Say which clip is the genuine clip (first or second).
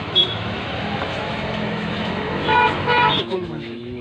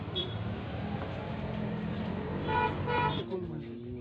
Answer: second